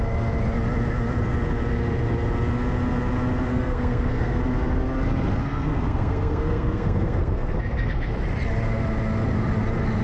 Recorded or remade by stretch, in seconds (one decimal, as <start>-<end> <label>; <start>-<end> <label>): 0.0-3.5 recorded; 3.5-4.4 remade; 4.4-5.4 recorded; 5.4-8.1 remade; 8.1-10.0 recorded